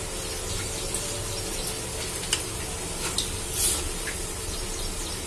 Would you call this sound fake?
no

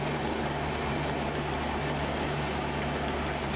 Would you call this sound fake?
no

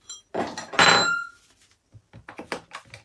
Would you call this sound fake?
no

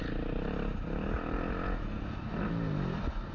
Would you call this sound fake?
no